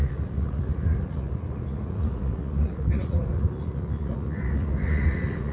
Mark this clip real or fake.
fake